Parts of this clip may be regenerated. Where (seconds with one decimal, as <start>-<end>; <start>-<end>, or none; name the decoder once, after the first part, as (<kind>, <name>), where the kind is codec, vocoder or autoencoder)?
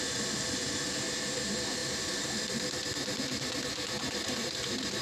none